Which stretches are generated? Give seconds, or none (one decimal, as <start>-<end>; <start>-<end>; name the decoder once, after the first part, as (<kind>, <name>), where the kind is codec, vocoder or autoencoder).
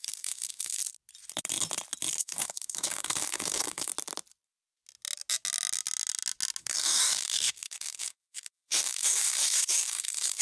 0.0-0.8 (codec, DAC); 2.2-3.9; 6.6-10.4